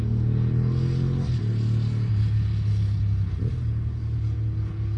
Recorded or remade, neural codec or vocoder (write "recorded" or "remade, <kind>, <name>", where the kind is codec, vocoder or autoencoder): recorded